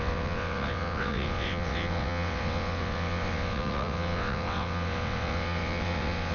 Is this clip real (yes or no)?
no